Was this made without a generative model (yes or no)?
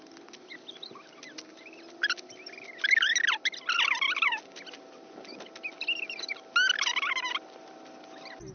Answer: yes